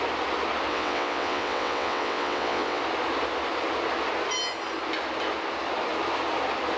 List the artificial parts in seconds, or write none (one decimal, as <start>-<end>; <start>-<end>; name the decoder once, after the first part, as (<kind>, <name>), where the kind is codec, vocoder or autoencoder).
0.7-2.8 (vocoder, WaveNeXt)